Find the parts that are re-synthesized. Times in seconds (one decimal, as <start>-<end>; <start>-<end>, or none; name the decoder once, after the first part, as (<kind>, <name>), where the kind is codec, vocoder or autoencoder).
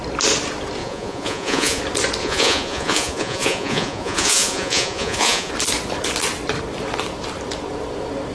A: 0.8-1.8 (vocoder, Vocos); 2.2-5.5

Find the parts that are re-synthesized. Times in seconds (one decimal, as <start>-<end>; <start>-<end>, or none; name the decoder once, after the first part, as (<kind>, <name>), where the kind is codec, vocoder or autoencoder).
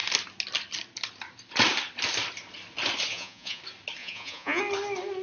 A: 3.1-3.6 (vocoder, Vocos); 4.0-4.6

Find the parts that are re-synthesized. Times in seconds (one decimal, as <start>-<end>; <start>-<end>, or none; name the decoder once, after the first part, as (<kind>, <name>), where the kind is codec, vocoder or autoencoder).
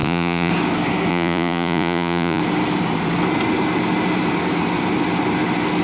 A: 0.0-0.5 (vocoder, Vocos); 1.1-2.4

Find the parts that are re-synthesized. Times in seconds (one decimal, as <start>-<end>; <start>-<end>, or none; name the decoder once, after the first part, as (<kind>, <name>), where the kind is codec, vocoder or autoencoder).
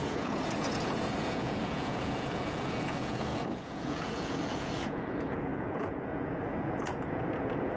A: 0.0-7.8 (vocoder, Vocos)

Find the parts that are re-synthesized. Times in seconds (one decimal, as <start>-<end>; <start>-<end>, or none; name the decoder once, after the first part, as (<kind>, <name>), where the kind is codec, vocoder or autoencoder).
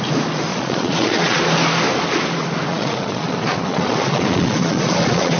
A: 0.5-1.4 (vocoder, Vocos); 2.7-5.4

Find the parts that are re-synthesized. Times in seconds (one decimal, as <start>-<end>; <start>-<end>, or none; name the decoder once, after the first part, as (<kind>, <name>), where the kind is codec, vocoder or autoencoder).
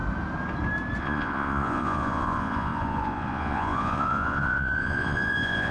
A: 1.0-5.7 (vocoder, Vocos)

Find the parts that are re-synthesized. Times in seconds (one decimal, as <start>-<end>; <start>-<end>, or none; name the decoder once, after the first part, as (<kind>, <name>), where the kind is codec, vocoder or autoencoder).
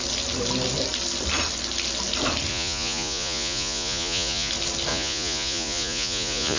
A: 2.5-4.5 (vocoder, Vocos); 4.9-6.6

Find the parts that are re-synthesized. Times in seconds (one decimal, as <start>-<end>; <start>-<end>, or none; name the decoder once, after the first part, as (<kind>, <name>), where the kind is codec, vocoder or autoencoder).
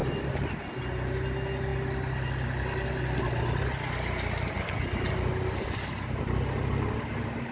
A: none